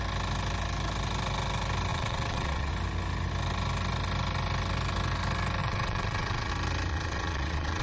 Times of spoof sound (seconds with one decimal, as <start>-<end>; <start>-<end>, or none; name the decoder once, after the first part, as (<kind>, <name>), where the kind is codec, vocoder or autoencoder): 1.9-2.7 (vocoder, WaveNeXt); 5.6-6.5; 6.9-7.8